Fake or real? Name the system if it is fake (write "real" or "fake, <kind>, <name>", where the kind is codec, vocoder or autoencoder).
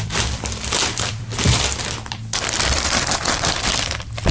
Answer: fake, vocoder, BigVGAN v2